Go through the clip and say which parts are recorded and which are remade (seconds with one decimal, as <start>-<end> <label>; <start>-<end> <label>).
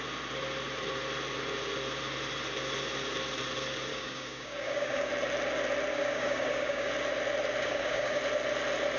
0.0-3.9 recorded; 3.9-5.1 remade; 5.1-5.9 recorded; 5.9-6.9 remade; 6.9-7.6 recorded; 7.6-8.2 remade; 8.2-9.0 recorded